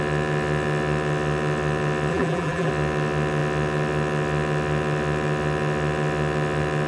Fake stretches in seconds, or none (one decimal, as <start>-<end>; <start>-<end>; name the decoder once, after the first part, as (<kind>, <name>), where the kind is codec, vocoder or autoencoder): 2.1-2.7 (vocoder, BigVGAN v2)

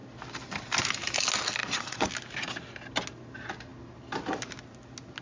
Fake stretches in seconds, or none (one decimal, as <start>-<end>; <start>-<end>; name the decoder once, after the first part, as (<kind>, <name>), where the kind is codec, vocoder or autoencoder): 1.6-2.1 (vocoder, Vocos)